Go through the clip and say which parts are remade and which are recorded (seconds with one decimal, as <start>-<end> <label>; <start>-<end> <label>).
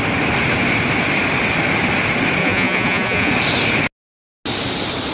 0.0-2.4 recorded; 2.4-3.3 remade; 3.3-5.1 recorded